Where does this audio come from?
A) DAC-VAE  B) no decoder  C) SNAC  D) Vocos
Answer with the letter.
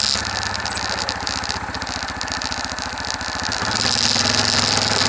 B